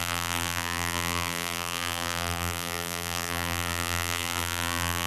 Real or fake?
fake